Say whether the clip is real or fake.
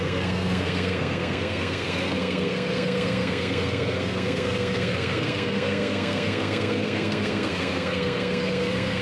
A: fake